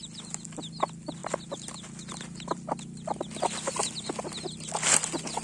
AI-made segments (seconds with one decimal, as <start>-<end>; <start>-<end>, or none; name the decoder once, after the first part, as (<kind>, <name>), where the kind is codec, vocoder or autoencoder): none